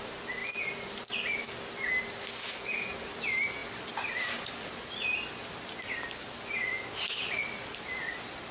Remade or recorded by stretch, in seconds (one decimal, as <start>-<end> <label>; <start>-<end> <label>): 0.0-8.5 recorded